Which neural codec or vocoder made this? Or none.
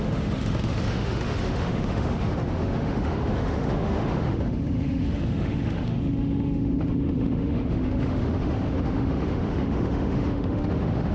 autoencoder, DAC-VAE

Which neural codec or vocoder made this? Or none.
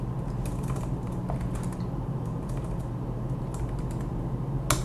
none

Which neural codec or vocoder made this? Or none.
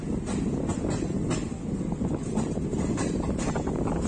none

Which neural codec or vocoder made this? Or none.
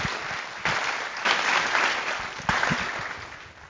none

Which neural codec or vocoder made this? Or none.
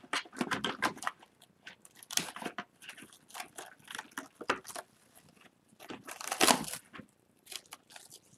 none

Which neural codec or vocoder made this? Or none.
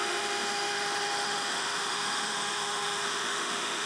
autoencoder, DAC-VAE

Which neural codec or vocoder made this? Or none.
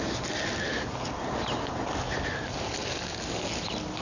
none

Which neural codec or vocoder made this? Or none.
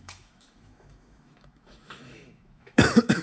autoencoder, DAC-VAE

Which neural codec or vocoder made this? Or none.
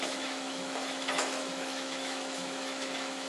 autoencoder, DAC-VAE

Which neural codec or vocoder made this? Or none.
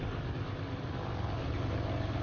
none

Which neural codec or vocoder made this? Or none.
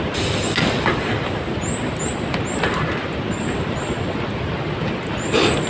none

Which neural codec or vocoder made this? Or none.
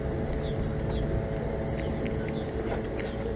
none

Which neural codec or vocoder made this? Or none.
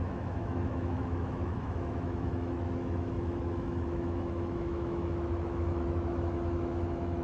autoencoder, DAC-VAE